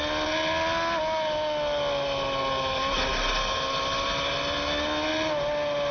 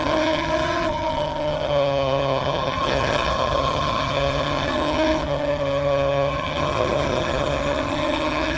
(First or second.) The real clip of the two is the first